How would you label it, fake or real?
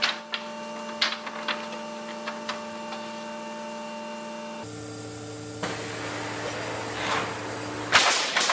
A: real